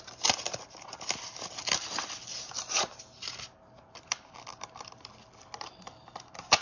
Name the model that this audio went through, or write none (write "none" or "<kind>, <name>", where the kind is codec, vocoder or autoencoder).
none